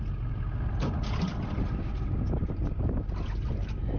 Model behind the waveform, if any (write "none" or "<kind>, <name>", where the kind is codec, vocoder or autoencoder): none